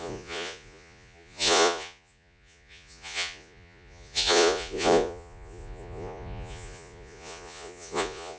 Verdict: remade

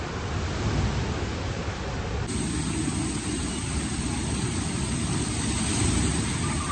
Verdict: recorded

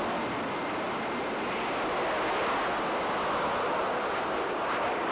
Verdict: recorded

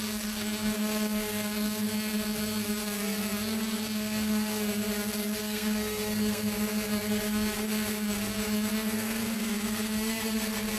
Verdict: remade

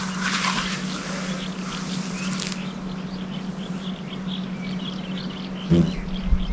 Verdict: recorded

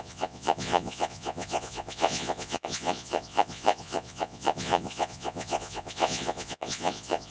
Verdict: remade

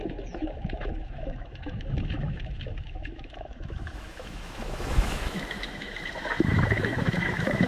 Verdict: remade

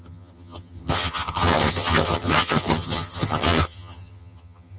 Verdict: remade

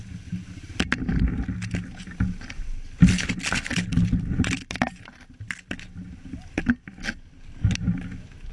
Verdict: recorded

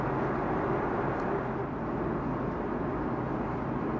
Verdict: recorded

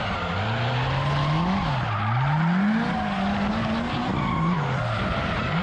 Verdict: recorded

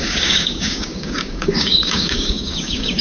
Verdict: remade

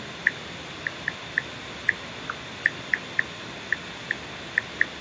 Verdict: recorded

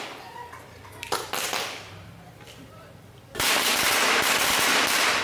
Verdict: remade